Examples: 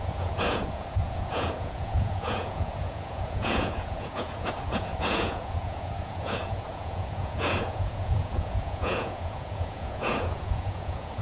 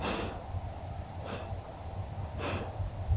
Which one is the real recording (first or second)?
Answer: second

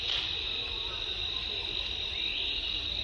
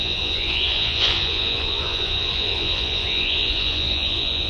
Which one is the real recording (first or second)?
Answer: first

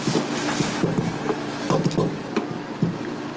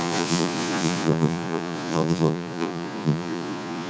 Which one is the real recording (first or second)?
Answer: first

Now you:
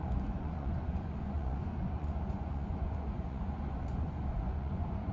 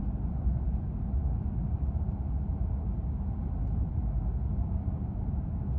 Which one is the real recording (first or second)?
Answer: second